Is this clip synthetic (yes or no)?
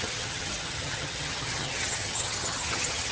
yes